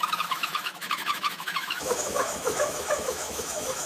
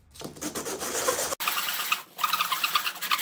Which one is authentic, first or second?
second